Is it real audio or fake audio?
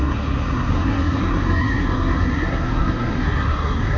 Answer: fake